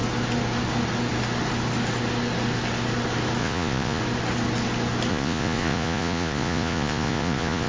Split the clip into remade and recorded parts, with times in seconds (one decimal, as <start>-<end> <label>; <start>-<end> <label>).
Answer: 0.0-3.4 recorded; 3.4-4.0 remade; 4.0-5.1 recorded; 5.1-7.7 remade

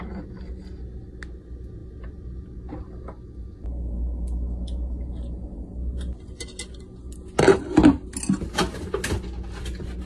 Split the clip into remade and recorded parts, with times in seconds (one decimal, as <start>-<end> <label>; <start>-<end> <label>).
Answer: 0.0-10.1 recorded

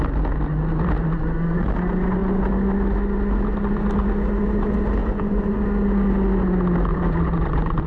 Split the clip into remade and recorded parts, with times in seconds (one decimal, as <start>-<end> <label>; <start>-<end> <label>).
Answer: 0.0-5.0 recorded; 5.0-5.6 remade; 5.6-6.9 recorded; 6.9-7.9 remade

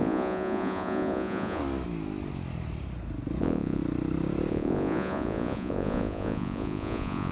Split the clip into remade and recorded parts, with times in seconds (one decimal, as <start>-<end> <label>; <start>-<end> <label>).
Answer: 0.0-1.6 remade; 1.6-3.4 recorded; 3.4-3.8 remade; 3.8-4.5 recorded; 4.5-7.3 remade

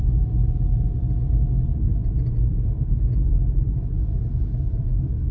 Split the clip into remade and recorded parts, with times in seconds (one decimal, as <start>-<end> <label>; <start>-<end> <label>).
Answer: 0.0-2.0 recorded; 2.0-2.8 remade; 2.8-4.0 recorded; 4.0-5.3 remade

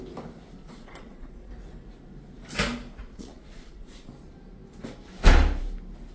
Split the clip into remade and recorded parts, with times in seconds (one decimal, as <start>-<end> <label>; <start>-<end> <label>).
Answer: 0.0-0.6 recorded; 0.6-1.5 remade; 1.5-3.0 recorded; 3.0-4.1 remade; 4.1-6.1 recorded

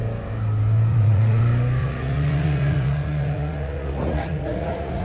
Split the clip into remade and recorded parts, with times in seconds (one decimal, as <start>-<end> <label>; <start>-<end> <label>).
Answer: 0.0-0.9 recorded; 0.9-1.4 remade; 1.4-1.8 recorded; 1.8-5.0 remade

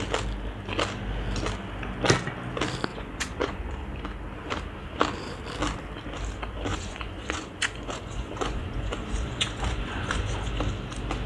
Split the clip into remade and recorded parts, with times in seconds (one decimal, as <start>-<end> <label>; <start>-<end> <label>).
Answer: 0.0-2.9 recorded; 2.9-3.7 remade; 3.7-6.7 recorded; 6.7-10.6 remade; 10.6-11.3 recorded